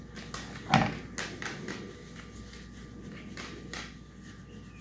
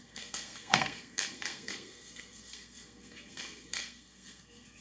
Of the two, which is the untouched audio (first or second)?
first